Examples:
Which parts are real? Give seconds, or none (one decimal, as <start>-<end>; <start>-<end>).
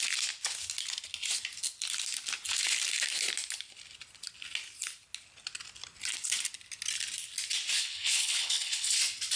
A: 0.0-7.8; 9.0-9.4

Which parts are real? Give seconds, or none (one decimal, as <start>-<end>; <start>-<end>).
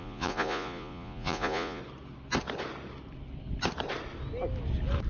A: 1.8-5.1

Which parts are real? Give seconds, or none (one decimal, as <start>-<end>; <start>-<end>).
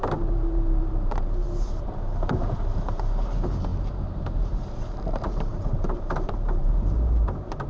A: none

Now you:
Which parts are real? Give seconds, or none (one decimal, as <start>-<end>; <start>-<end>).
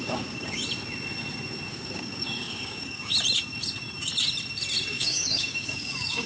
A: 0.6-1.7; 3.1-4.9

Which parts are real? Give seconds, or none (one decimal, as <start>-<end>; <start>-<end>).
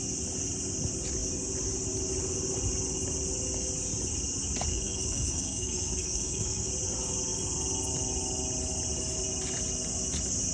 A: 0.0-4.7; 6.7-10.5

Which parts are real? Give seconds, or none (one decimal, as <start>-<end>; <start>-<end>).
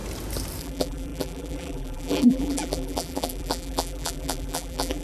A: 0.0-0.6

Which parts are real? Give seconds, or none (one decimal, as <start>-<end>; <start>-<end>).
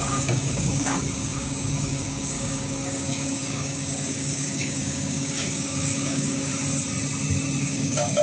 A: 6.5-7.6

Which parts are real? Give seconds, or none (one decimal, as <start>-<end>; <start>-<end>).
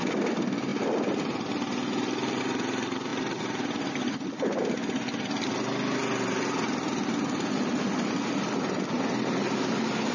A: 0.0-10.1